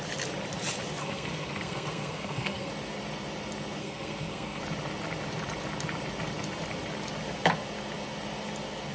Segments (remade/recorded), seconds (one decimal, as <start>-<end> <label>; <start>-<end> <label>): 0.0-1.0 recorded; 1.0-2.7 remade; 2.7-3.8 recorded; 3.8-4.6 remade; 4.6-8.9 recorded